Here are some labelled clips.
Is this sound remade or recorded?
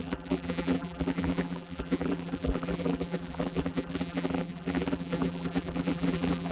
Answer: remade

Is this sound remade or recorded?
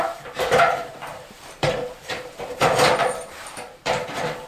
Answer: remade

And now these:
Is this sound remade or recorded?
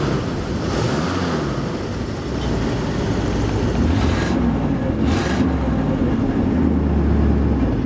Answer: recorded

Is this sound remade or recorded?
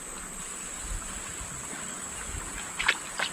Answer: recorded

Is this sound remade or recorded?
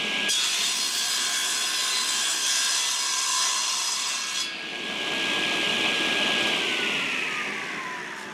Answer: recorded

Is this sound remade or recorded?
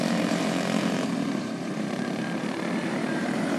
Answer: remade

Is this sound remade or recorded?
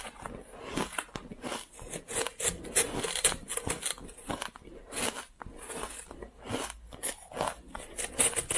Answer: recorded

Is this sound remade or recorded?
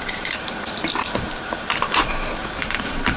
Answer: remade